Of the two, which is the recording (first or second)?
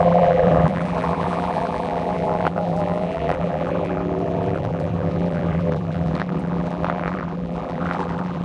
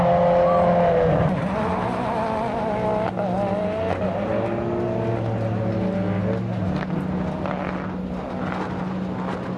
second